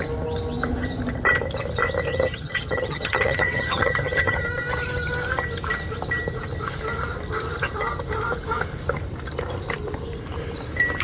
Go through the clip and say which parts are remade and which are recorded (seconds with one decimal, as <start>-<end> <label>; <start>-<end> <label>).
0.0-2.1 recorded; 2.1-4.4 remade; 4.4-11.0 recorded